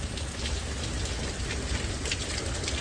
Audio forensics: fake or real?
real